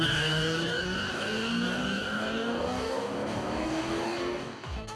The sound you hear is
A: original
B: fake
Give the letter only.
B